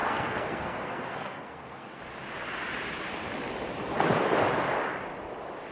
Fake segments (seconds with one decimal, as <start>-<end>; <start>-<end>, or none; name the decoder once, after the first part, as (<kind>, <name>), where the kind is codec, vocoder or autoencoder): 0.0-2.0 (codec, SNAC)